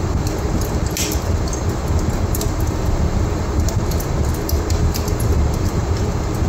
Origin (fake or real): real